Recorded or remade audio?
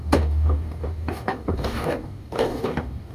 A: remade